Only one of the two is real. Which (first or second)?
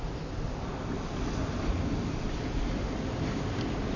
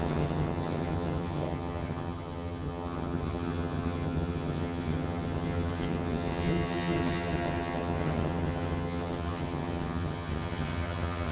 first